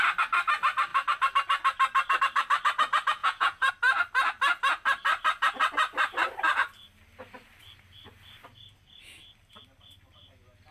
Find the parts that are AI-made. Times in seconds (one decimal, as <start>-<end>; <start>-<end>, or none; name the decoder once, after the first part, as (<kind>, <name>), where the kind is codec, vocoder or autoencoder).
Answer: 3.2-3.7 (vocoder, Vocos)

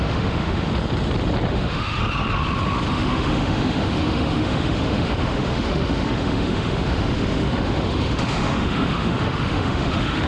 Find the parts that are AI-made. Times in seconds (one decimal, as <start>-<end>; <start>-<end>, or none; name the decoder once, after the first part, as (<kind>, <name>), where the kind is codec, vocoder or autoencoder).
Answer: 0.0-0.7 (autoencoder, DAC-VAE); 1.5-2.0; 2.9-10.3

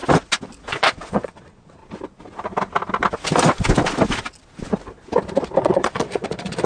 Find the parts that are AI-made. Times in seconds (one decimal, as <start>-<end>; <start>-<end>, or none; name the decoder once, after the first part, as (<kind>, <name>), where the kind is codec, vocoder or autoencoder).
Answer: 0.7-1.8 (vocoder, Vocos); 5.6-6.7